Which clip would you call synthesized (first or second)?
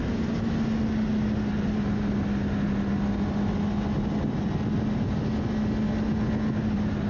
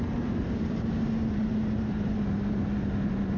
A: second